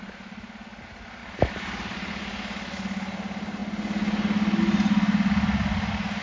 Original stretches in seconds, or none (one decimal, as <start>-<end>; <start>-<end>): 0.0-1.2; 2.1-6.2